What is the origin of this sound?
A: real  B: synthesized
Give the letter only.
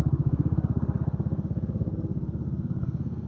B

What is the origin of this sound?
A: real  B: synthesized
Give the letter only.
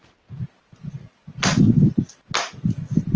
A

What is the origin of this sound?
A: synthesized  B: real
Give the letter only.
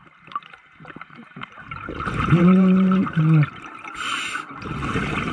A